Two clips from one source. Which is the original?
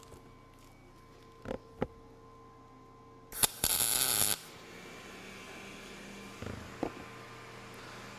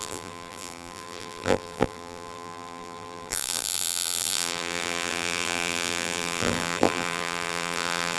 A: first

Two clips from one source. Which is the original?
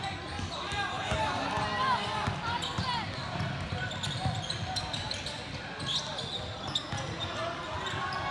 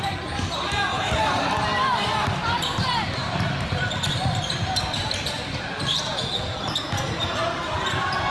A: first